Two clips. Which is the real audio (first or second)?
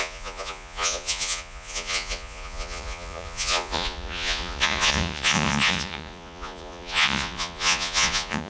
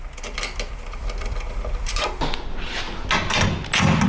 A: second